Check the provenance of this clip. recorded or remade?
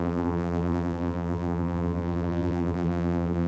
remade